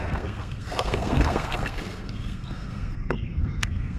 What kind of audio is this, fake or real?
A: fake